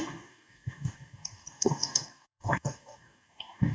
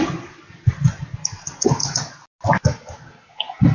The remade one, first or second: first